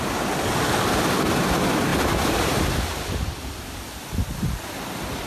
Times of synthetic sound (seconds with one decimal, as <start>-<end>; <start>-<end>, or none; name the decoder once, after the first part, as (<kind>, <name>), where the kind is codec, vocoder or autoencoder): none